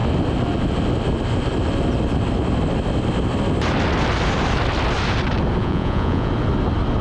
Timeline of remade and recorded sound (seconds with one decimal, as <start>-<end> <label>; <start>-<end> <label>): 0.0-5.6 recorded; 5.6-6.3 remade; 6.3-7.0 recorded